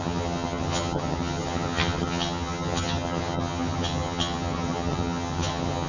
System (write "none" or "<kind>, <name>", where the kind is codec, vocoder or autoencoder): vocoder, HiFi-GAN